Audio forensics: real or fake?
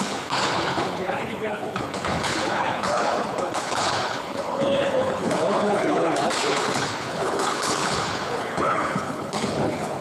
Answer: fake